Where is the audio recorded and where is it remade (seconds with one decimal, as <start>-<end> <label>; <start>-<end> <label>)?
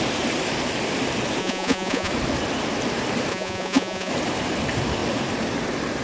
0.0-1.4 recorded; 1.4-2.1 remade; 2.1-3.3 recorded; 3.3-4.1 remade; 4.1-6.0 recorded